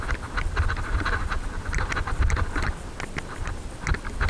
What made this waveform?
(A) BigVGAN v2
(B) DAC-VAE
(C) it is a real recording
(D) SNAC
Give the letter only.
C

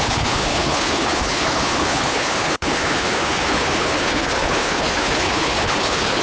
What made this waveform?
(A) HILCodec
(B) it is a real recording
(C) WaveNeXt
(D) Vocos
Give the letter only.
A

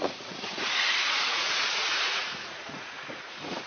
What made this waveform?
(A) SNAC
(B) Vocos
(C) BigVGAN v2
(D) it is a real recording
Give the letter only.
B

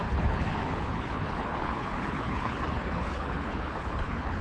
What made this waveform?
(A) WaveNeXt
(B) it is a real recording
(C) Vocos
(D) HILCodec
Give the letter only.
D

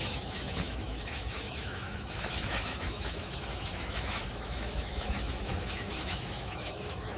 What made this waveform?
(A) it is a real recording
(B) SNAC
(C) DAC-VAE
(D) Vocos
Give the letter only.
C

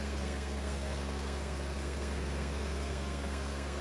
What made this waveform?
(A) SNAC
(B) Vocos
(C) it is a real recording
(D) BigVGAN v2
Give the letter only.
A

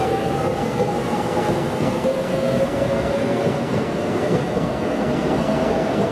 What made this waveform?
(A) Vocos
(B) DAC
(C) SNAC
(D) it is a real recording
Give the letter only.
C